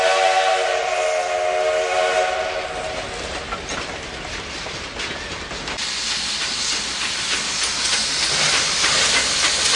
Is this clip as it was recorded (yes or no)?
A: yes